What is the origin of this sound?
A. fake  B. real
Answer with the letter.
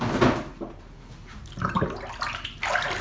B